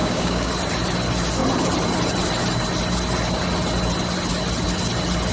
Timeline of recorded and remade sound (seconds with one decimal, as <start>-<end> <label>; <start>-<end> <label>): 0.0-0.5 remade; 0.5-5.3 recorded